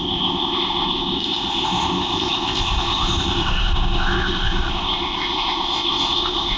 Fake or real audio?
fake